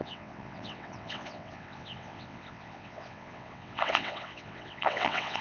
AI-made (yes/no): yes